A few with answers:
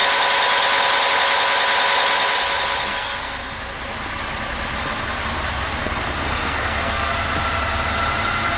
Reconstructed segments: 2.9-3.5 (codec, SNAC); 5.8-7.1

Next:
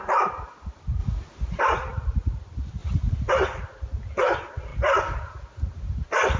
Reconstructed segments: none

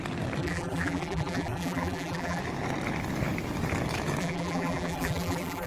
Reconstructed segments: 0.4-2.4 (vocoder, BigVGAN v2); 4.2-5.7

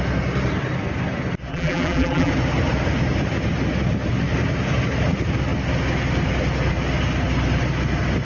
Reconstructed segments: 1.5-2.3 (vocoder, BigVGAN v2)